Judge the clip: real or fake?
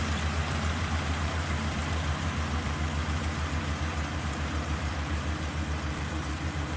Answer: fake